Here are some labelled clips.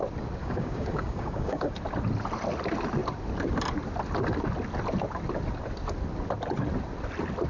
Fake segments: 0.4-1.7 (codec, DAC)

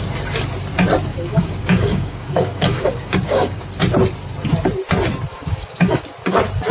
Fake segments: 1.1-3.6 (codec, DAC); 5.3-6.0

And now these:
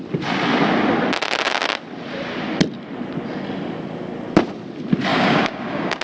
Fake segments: 5.1-6.0 (codec, DAC)

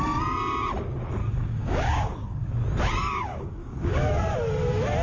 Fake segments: 1.2-2.5 (codec, DAC); 3.0-4.0